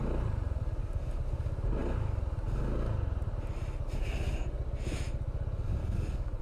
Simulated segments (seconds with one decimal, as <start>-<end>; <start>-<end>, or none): 5.8-6.4